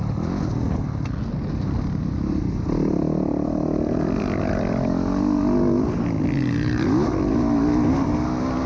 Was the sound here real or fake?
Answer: real